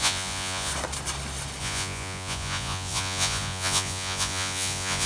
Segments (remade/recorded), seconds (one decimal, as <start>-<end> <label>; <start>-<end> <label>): 0.0-0.7 remade; 0.7-1.6 recorded; 1.6-5.1 remade